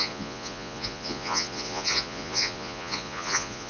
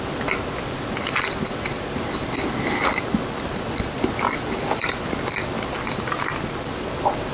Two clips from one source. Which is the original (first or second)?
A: second